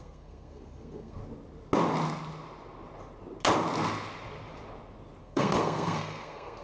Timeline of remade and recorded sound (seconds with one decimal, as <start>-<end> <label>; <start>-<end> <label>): 0.0-1.2 remade; 1.2-5.2 recorded; 5.2-6.6 remade